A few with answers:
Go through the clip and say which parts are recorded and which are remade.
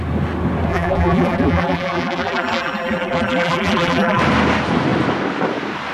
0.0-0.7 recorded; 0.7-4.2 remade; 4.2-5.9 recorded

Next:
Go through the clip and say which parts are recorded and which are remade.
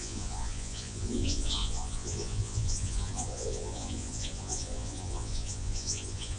0.0-6.4 remade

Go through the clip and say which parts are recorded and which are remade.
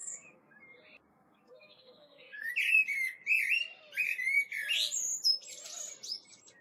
0.0-0.6 remade; 0.6-1.1 recorded; 1.1-2.5 remade; 2.5-6.6 recorded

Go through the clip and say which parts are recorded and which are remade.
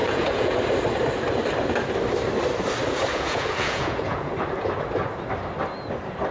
0.0-0.6 remade; 0.6-3.1 recorded; 3.1-4.3 remade; 4.3-6.3 recorded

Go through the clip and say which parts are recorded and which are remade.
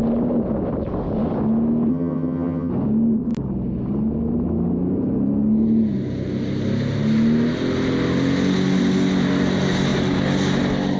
0.0-1.9 recorded; 1.9-2.7 remade; 2.7-11.0 recorded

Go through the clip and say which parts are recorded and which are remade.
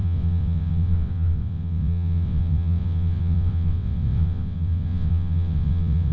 0.0-6.1 remade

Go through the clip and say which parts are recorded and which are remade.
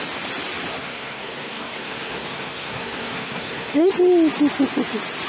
0.0-0.7 recorded; 0.7-3.9 remade; 3.9-5.3 recorded